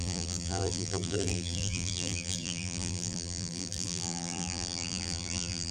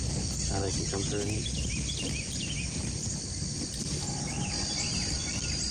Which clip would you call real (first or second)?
second